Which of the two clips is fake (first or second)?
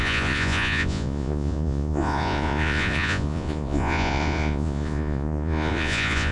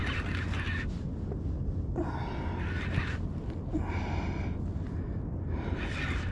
first